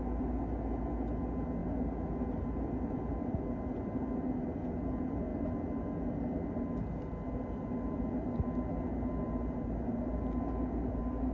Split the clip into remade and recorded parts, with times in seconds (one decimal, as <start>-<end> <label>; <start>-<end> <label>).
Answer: 0.0-11.3 recorded